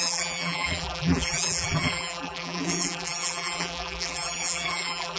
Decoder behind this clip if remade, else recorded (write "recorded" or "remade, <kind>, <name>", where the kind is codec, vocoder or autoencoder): remade, vocoder, BigVGAN v2